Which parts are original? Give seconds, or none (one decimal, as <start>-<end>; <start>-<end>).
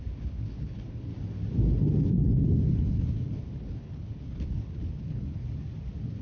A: 1.1-1.7; 5.4-6.2